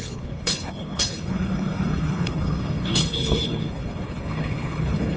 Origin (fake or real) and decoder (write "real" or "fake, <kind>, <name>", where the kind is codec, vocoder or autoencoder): fake, codec, HILCodec